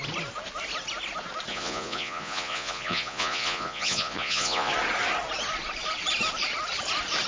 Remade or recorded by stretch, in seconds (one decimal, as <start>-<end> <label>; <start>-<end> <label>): 0.0-1.5 recorded; 1.5-4.7 remade; 4.7-7.3 recorded